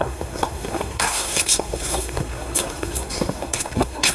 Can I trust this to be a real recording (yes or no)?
no